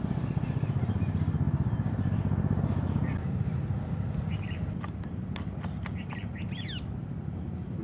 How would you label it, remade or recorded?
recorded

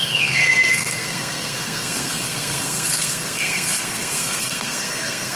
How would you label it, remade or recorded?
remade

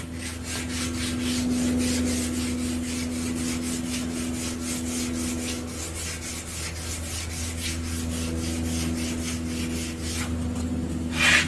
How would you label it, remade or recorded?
recorded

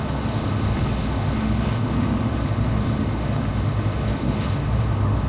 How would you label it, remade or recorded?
remade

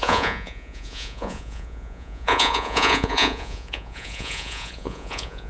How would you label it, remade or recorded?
remade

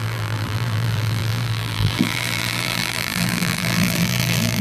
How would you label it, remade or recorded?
remade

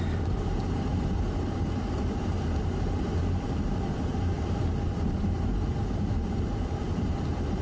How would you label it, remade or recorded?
remade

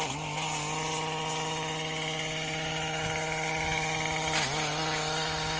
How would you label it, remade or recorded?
recorded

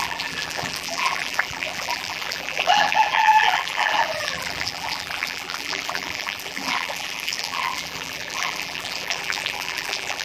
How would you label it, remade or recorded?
remade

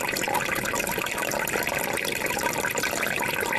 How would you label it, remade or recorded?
recorded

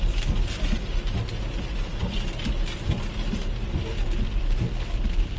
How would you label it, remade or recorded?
recorded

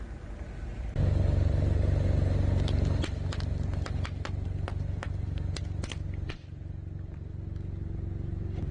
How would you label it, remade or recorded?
recorded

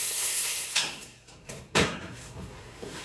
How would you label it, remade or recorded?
remade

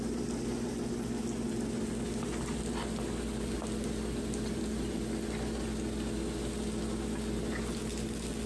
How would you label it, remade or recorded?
recorded